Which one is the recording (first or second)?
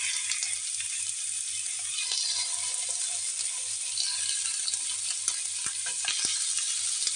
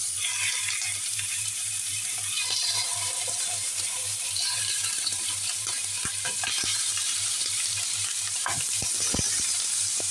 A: first